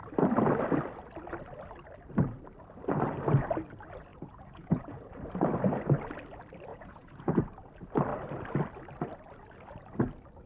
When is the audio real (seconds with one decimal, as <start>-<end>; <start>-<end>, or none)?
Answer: 0.0-4.1; 5.0-6.7; 7.4-10.5